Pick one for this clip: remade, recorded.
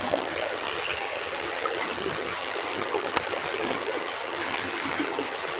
remade